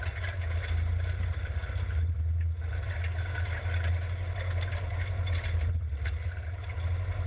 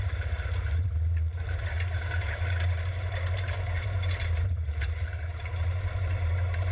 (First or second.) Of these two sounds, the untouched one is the first